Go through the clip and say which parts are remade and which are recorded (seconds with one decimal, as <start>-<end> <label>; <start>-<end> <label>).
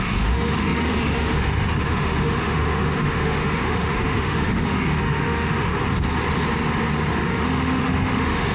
0.0-5.7 remade; 5.7-7.1 recorded; 7.1-8.5 remade